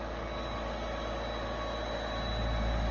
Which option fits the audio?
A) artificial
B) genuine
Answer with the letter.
B